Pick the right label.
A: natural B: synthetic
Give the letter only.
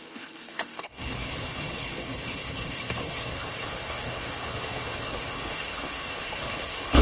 B